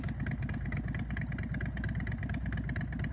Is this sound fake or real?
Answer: real